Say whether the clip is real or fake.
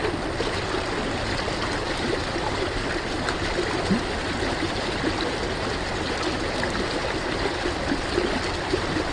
real